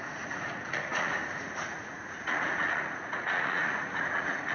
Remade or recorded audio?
remade